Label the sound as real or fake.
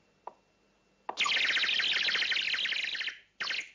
real